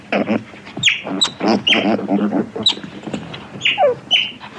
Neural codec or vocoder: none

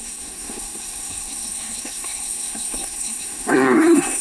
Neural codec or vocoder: codec, SNAC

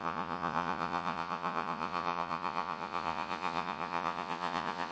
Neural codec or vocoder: vocoder, Vocos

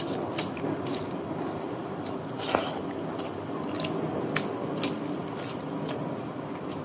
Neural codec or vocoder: none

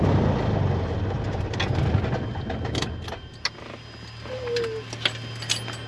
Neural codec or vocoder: none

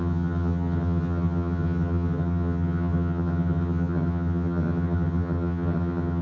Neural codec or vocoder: vocoder, HiFi-GAN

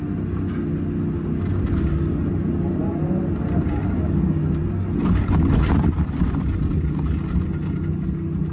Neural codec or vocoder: none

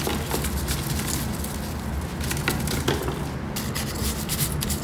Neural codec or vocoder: none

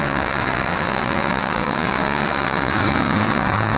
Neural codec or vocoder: vocoder, WaveNeXt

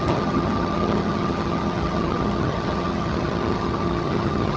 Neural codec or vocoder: vocoder, HiFi-GAN